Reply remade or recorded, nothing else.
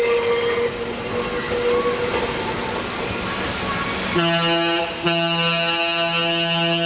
recorded